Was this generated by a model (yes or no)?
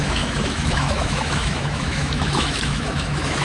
yes